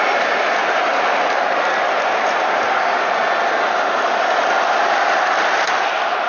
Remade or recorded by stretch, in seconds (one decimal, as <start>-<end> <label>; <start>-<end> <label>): 0.0-6.3 recorded